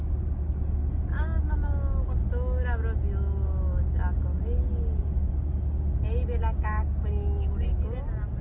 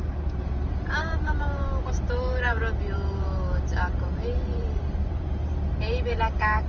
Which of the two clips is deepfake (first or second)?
second